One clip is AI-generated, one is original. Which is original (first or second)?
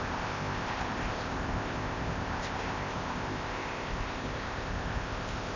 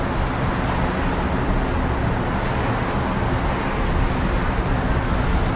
second